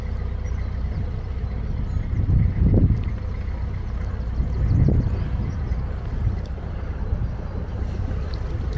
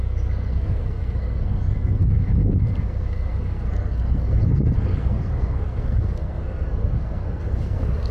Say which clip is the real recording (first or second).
first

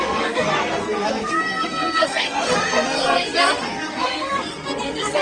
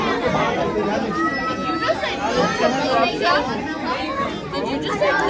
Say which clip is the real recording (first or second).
second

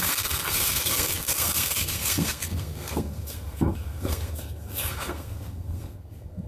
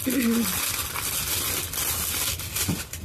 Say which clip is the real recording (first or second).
second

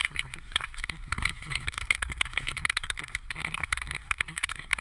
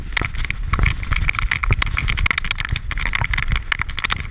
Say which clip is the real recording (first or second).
second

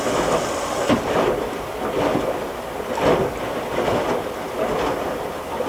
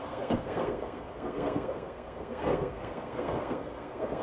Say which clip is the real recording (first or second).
first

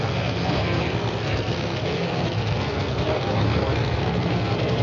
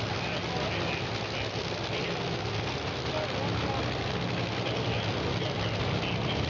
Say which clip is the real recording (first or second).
second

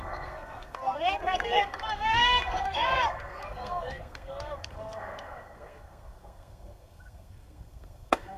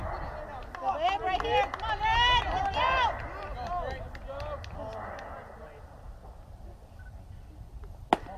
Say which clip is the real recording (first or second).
second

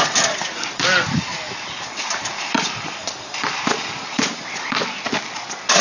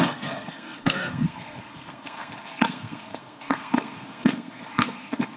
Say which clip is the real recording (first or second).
first